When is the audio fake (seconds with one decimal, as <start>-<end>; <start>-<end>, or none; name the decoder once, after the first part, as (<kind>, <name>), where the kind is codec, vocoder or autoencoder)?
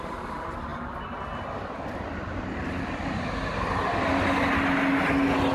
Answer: none